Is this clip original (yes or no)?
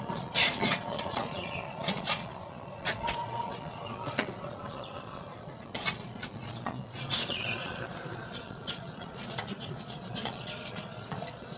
no